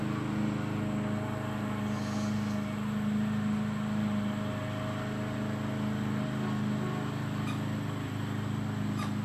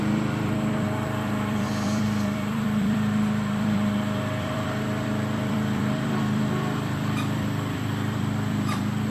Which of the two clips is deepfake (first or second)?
second